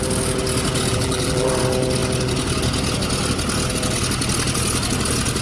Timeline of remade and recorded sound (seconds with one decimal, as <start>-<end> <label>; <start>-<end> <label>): 0.0-0.9 recorded; 0.9-1.5 remade; 1.5-5.4 recorded

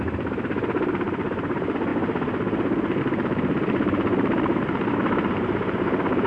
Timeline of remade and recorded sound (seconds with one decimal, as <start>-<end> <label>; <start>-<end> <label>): 0.0-1.9 remade; 1.9-3.0 recorded; 3.0-6.3 remade